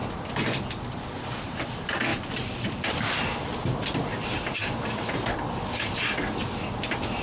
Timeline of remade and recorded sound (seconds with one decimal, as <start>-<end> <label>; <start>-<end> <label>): 0.0-7.2 recorded